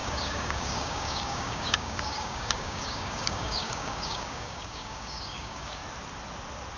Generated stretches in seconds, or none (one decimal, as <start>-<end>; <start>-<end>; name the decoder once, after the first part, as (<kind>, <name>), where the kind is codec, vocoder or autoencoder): 0.0-5.8 (codec, DAC)